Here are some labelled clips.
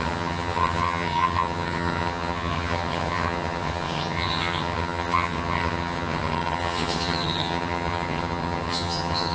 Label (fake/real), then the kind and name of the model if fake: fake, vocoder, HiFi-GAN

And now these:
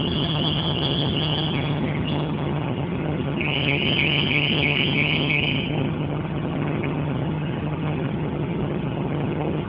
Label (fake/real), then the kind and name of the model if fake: fake, vocoder, HiFi-GAN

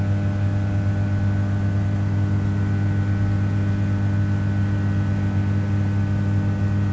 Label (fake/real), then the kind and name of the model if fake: real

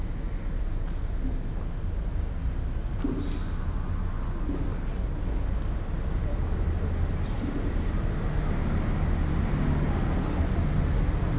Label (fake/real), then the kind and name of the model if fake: real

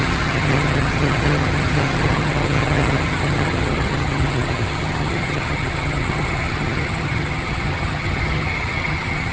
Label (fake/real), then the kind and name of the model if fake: fake, vocoder, HiFi-GAN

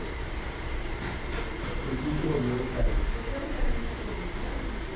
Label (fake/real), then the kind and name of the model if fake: real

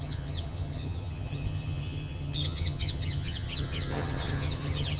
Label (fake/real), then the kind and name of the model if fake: fake, vocoder, HiFi-GAN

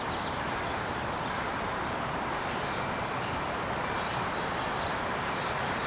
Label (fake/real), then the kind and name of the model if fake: real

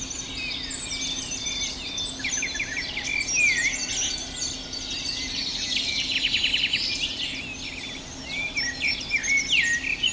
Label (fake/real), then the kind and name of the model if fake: real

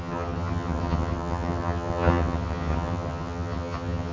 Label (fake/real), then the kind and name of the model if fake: fake, vocoder, HiFi-GAN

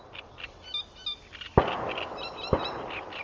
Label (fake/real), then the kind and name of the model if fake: real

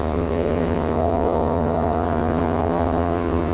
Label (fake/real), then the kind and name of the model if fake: fake, vocoder, HiFi-GAN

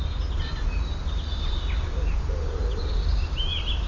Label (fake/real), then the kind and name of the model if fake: real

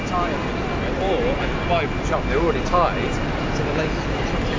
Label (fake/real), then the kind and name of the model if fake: real